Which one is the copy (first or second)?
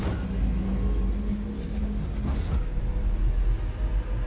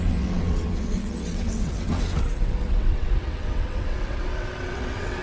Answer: second